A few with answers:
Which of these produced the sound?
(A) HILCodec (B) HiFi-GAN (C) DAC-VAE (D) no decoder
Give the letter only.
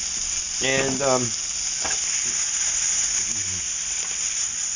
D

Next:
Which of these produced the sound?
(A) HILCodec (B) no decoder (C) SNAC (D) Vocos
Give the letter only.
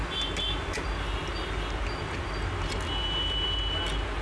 B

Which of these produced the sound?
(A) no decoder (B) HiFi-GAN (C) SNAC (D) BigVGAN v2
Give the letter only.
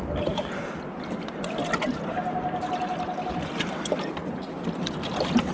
A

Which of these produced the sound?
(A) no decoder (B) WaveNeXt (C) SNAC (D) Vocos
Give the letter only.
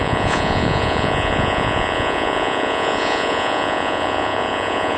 D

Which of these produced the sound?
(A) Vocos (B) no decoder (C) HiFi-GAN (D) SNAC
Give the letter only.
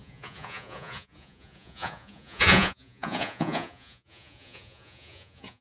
A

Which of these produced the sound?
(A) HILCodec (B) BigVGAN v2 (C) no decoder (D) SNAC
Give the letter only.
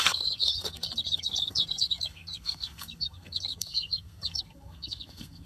D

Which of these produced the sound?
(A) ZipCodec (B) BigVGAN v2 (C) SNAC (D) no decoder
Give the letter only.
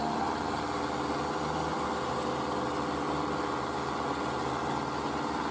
D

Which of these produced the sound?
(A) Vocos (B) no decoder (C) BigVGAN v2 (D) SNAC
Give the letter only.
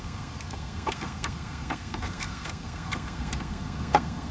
D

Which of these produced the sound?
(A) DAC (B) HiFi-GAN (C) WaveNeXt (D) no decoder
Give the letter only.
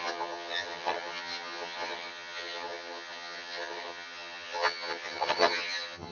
B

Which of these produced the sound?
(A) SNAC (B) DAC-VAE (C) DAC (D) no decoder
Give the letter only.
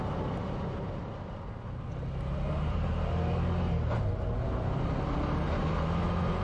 D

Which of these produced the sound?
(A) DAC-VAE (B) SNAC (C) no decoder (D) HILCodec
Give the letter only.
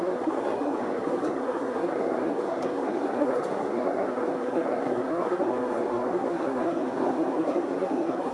B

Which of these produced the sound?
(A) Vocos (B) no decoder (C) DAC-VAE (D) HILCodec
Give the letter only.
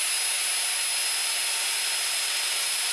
B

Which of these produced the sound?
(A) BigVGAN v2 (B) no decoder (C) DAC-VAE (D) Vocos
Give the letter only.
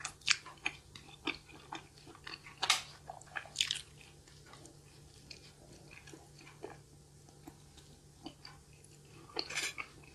B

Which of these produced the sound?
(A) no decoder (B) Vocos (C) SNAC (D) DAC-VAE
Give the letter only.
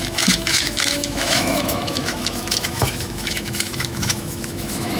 D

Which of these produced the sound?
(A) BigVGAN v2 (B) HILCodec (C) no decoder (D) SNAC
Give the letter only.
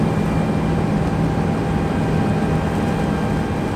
C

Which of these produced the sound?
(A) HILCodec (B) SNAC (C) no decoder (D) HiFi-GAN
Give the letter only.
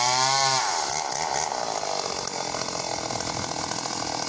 C